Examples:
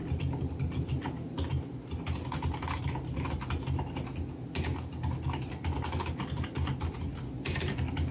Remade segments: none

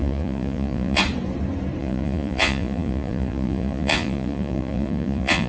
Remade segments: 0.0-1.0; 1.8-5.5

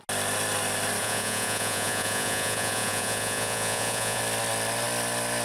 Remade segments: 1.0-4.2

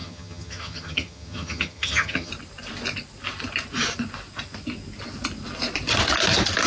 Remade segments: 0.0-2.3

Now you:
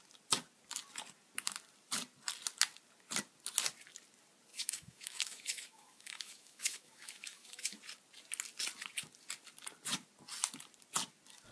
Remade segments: 4.5-7.8

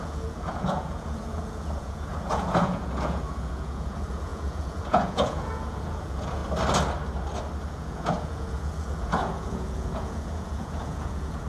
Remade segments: 0.0-6.4; 7.7-11.5

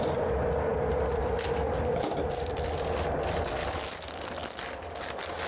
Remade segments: none

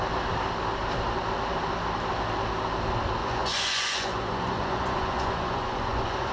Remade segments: 3.2-6.3